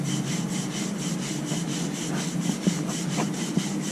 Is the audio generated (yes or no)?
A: no